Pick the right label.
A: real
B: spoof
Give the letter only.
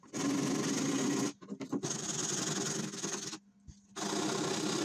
A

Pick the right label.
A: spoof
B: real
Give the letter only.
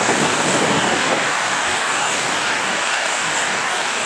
A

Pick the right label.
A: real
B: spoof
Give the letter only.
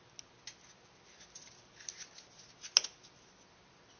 A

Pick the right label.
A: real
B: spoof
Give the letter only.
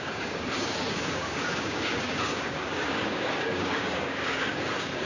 B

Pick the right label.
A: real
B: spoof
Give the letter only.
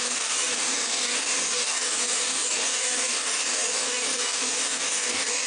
B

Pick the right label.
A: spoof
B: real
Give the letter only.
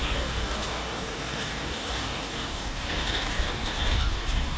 A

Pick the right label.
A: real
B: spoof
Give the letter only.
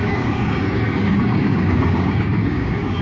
B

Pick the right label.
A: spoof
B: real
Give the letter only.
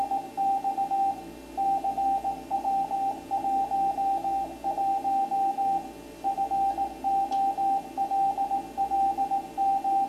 B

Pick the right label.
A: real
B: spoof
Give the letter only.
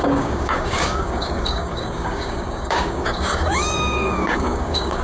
B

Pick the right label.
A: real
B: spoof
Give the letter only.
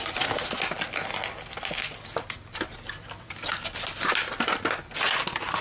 A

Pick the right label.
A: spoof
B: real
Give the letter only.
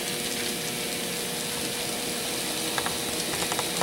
B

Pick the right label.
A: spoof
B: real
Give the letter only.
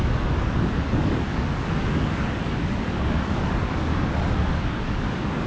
A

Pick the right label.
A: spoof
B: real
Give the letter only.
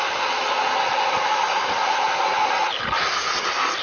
B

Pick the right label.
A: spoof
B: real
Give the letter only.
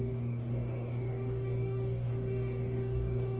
A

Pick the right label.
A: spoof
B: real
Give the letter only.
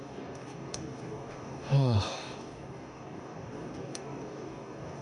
A